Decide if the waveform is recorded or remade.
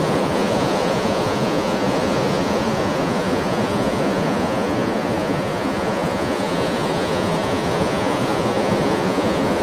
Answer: remade